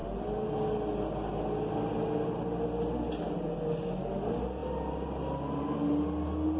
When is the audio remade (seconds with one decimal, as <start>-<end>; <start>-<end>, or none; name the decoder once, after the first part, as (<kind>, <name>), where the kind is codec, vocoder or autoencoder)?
none